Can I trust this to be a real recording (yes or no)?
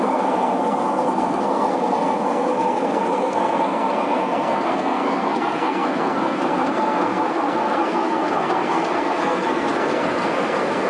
no